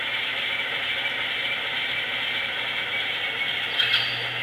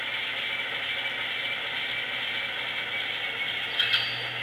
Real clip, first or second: second